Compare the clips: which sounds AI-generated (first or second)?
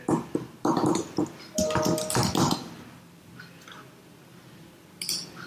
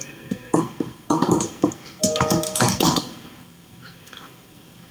second